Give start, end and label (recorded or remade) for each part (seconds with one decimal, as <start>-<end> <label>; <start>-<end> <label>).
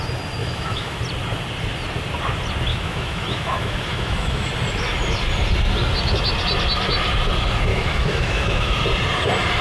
0.0-0.4 recorded; 0.4-1.0 remade; 1.0-2.7 recorded; 2.7-4.5 remade; 4.5-7.7 recorded; 7.7-8.8 remade; 8.8-9.6 recorded